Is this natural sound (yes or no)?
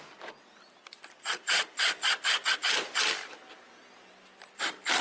yes